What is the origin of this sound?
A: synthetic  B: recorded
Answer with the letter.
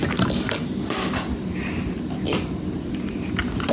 B